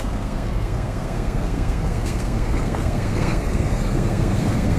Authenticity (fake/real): fake